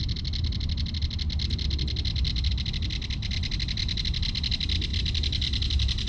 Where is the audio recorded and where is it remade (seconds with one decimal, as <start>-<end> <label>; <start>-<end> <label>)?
0.0-6.1 recorded